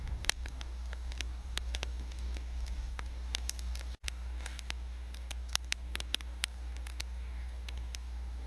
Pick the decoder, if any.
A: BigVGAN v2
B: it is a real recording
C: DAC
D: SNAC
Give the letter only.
C